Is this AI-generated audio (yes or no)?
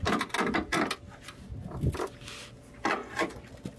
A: no